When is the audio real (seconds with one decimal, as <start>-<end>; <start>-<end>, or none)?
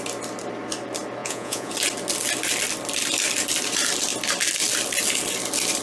0.0-1.2; 1.7-5.8